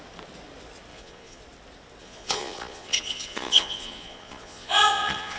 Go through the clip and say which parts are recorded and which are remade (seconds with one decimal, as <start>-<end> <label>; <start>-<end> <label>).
0.0-0.9 recorded; 0.9-1.4 remade; 1.4-2.0 recorded; 2.0-5.4 remade